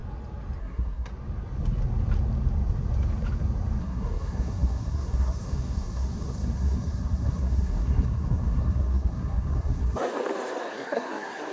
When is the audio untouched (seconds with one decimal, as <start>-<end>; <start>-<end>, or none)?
0.0-0.6; 1.1-3.8; 10.1-10.7